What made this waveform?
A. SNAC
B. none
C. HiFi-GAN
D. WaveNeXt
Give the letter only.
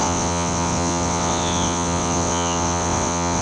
D